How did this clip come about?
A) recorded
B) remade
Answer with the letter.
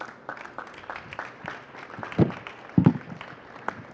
A